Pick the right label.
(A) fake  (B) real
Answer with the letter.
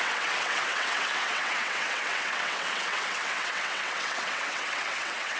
A